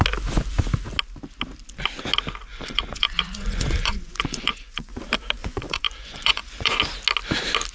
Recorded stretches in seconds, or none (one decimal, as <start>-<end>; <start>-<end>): 0.0-2.5; 5.0-5.4; 6.8-7.7